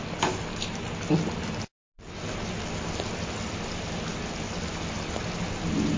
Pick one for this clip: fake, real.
real